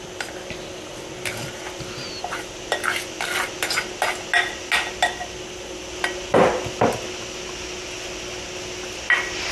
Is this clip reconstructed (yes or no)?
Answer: no